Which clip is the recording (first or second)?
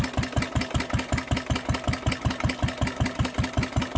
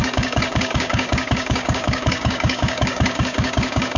first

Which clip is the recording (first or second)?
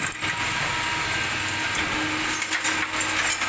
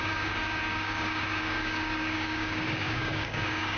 first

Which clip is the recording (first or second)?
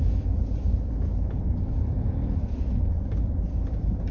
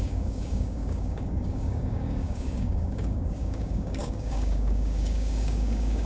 first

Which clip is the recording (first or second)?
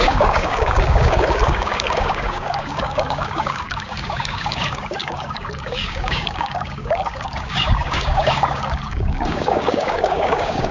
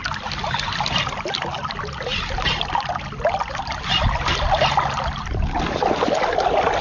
second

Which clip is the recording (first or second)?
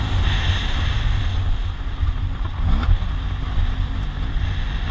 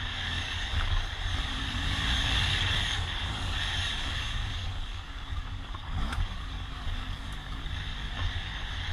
first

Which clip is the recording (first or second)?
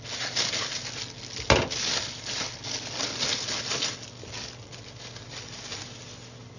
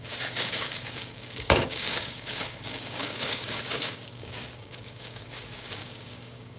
first